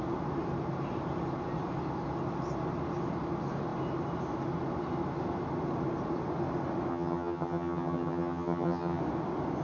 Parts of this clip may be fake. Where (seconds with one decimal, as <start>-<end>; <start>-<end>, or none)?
6.9-9.0